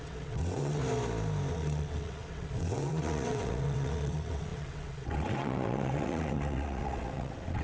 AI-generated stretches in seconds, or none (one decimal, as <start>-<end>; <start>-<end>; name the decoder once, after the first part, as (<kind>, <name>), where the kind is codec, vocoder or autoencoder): 0.0-0.8 (vocoder, WaveNeXt); 1.5-7.6